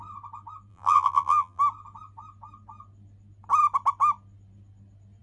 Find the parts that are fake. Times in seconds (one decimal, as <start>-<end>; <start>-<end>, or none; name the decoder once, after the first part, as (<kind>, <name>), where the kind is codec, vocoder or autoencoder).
0.7-1.6 (vocoder, BigVGAN v2)